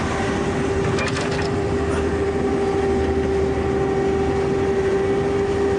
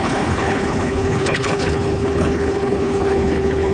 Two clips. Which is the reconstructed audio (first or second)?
second